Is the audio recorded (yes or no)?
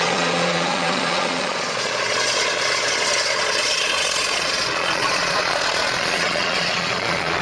no